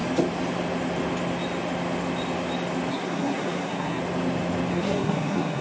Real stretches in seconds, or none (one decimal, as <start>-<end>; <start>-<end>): 0.0-2.9; 4.0-4.7